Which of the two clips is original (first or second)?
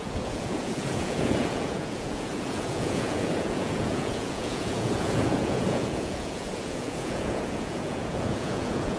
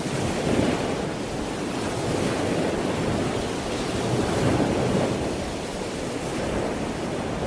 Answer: second